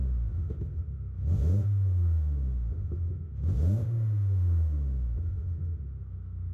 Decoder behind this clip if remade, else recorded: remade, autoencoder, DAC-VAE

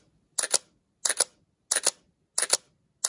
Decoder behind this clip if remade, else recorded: recorded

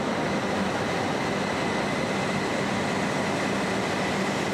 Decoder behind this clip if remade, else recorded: recorded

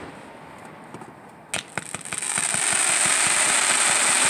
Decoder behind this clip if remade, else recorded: recorded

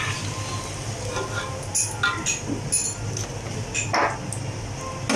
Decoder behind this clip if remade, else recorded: recorded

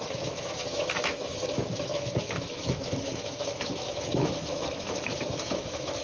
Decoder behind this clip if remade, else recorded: remade, autoencoder, DAC-VAE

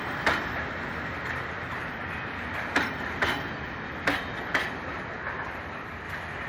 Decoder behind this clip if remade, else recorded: recorded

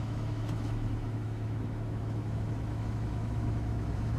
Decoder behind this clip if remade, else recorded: remade, autoencoder, DAC-VAE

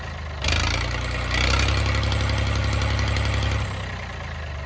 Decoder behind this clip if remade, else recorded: recorded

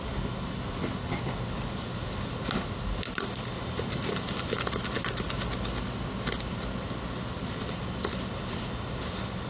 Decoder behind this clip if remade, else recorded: recorded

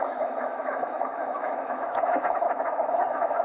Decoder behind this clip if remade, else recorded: remade, autoencoder, DAC-VAE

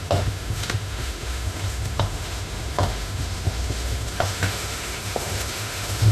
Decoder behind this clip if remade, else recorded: remade, autoencoder, DAC-VAE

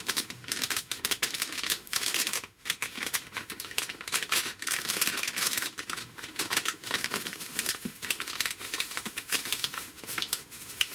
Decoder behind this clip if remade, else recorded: remade, autoencoder, DAC-VAE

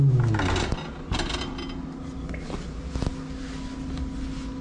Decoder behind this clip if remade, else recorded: recorded